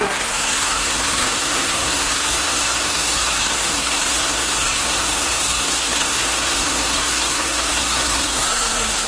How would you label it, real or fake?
fake